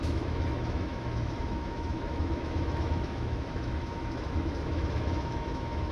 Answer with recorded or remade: remade